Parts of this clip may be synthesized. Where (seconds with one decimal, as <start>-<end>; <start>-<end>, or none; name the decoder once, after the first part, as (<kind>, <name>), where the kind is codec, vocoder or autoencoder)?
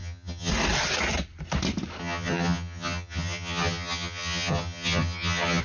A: 0.0-0.5 (vocoder, HiFi-GAN); 2.0-5.6